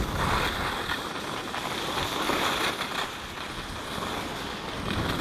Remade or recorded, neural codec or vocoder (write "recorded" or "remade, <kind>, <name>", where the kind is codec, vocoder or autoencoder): recorded